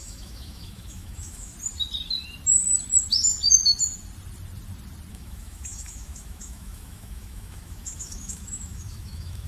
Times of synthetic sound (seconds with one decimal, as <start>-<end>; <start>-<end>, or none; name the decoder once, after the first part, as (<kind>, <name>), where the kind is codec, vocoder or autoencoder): 0.0-1.5 (autoencoder, DAC-VAE); 5.1-9.5